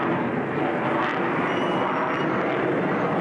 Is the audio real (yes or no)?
yes